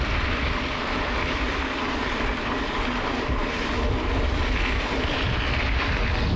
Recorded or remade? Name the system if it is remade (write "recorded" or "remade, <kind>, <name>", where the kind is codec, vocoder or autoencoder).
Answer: recorded